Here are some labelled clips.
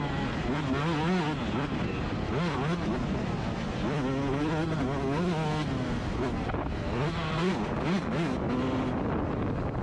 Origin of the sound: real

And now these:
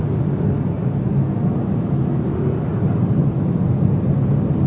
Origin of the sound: real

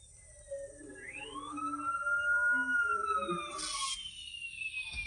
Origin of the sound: real